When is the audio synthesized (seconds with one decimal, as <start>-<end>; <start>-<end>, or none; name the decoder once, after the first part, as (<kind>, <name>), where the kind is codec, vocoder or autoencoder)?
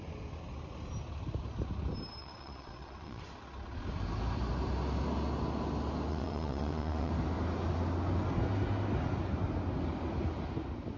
2.2-3.2 (vocoder, WaveNeXt); 6.1-7.1